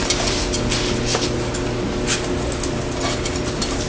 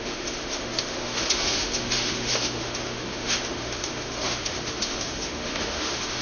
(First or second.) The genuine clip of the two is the first